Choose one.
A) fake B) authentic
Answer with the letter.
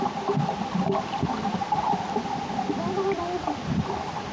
A